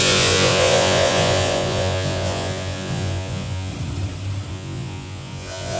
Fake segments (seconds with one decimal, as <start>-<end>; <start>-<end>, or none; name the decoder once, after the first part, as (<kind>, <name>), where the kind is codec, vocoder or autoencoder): 0.0-3.7 (vocoder, Vocos); 4.5-5.8